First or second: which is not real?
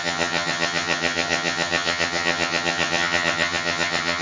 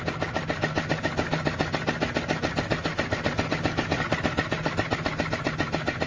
first